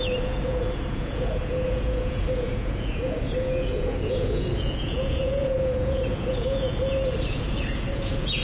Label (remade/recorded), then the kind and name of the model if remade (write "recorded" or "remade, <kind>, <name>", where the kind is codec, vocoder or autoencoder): remade, vocoder, Vocos